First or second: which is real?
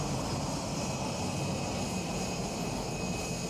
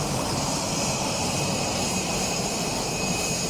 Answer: first